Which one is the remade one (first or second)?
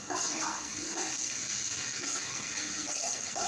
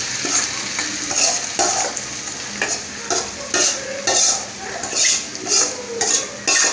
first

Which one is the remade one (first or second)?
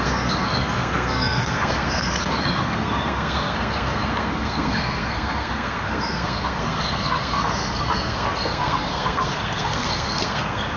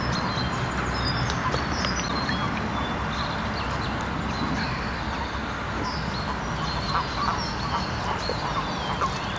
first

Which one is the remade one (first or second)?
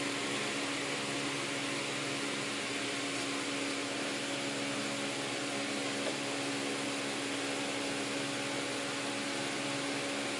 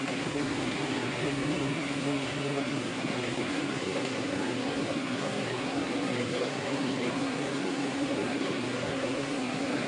second